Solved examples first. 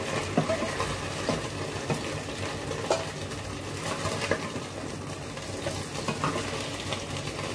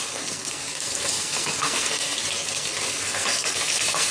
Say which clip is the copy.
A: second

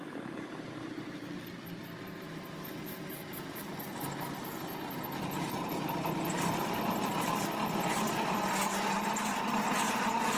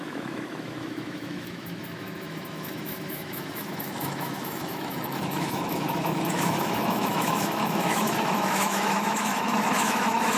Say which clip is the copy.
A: second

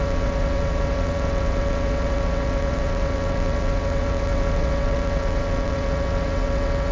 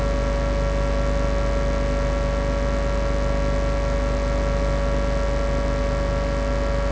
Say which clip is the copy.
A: first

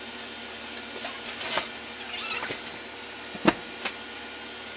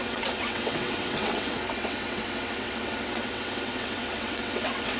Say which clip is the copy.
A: second